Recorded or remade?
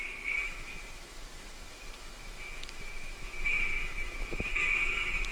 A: remade